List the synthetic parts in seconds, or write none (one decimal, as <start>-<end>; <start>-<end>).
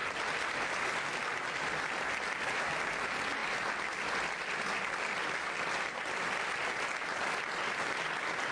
none